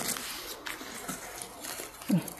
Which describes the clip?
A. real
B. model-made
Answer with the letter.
A